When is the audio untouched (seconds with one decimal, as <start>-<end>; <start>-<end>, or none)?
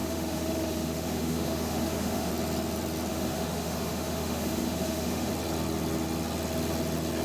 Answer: 2.3-3.1; 5.3-7.2